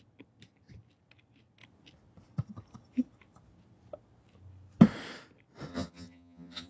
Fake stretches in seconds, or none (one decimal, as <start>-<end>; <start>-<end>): 5.7-6.7